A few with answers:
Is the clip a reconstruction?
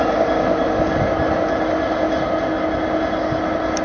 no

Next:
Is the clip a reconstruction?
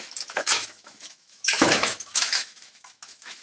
yes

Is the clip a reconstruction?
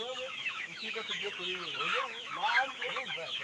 yes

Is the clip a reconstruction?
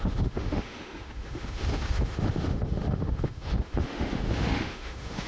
yes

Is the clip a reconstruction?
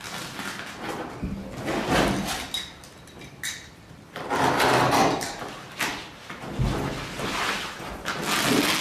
no